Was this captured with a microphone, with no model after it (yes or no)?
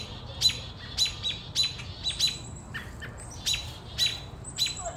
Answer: yes